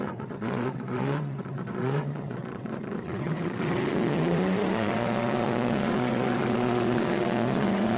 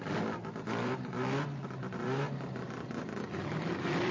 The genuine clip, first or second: second